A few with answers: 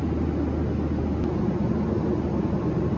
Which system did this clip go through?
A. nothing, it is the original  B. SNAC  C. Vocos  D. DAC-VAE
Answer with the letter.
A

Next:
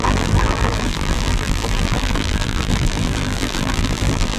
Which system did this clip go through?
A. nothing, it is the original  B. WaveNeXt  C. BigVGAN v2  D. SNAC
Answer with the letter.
C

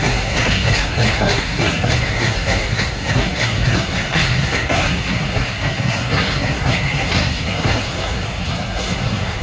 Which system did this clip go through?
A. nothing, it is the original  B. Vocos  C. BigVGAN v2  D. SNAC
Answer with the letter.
D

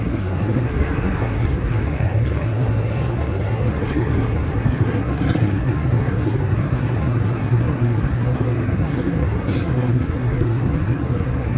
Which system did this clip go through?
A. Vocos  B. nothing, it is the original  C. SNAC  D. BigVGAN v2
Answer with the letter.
C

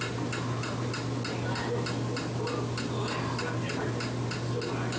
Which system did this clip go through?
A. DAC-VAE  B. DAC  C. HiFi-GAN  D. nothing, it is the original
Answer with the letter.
D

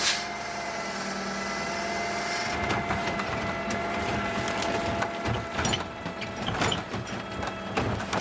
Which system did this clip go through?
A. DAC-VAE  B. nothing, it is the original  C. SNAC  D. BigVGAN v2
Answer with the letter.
B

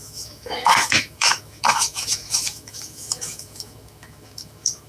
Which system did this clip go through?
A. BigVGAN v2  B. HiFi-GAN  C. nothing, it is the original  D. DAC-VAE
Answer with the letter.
D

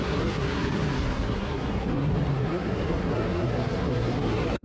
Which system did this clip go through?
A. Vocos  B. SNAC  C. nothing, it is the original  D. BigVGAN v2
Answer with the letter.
B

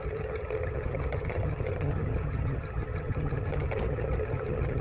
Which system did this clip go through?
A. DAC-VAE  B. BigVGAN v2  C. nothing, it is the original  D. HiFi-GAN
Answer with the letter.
D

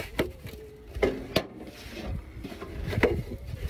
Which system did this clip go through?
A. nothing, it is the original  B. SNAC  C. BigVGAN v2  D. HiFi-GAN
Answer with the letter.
A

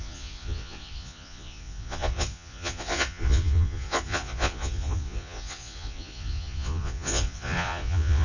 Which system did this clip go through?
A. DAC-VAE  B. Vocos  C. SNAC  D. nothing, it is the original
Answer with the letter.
B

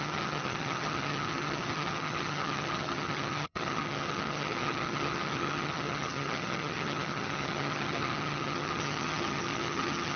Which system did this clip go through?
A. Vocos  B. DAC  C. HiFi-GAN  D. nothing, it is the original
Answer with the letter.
C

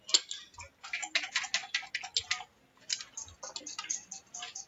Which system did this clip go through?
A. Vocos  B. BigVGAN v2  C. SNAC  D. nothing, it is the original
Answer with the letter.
D